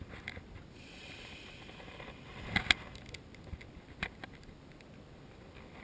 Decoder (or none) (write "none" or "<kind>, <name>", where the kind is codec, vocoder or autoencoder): none